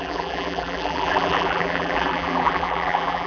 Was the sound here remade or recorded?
remade